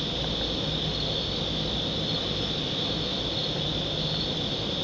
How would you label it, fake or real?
real